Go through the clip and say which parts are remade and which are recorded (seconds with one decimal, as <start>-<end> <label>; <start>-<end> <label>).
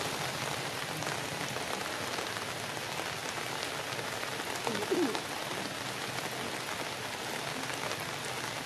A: 0.0-3.2 recorded; 3.2-6.3 remade; 6.3-8.7 recorded